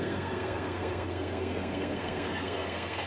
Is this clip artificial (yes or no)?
yes